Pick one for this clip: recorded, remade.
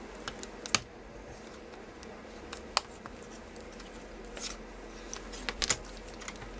recorded